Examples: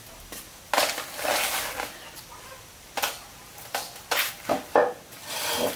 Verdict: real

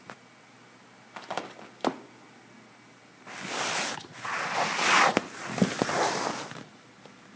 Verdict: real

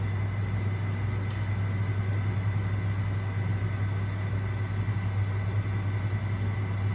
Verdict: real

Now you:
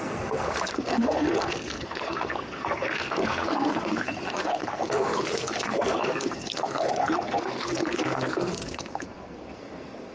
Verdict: fake